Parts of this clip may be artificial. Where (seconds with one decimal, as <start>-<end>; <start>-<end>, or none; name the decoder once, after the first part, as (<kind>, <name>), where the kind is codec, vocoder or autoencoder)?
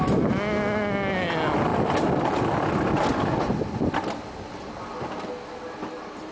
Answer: none